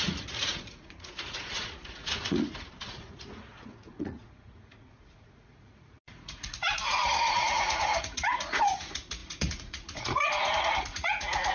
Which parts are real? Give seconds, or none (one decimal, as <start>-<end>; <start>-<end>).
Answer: none